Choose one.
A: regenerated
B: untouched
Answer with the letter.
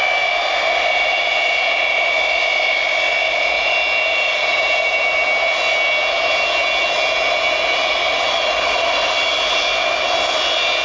B